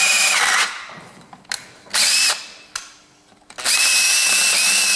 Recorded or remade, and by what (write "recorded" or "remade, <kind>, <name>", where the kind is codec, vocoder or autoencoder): recorded